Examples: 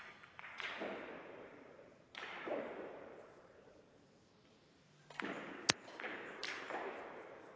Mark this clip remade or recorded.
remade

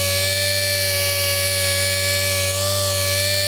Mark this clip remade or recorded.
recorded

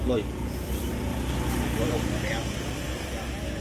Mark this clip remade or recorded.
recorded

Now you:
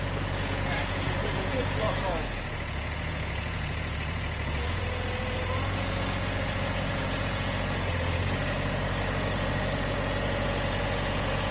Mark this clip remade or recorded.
remade